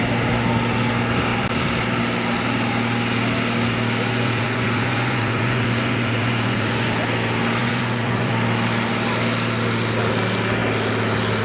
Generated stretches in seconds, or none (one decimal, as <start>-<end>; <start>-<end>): 4.1-6.9; 7.6-8.3